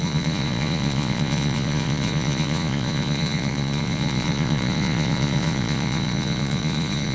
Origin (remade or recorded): remade